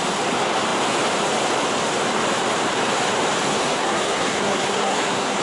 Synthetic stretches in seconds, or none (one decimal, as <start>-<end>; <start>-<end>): 3.5-5.4